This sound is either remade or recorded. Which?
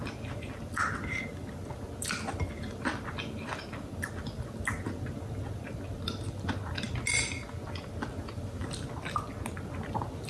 recorded